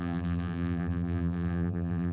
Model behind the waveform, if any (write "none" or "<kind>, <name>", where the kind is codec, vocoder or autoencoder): vocoder, BigVGAN v2